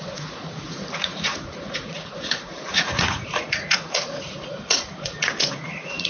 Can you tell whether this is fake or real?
fake